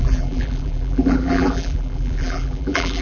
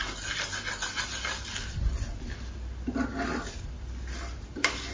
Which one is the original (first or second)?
second